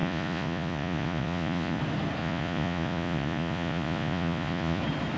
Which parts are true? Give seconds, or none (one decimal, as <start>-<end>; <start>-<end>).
1.8-2.2; 4.8-5.2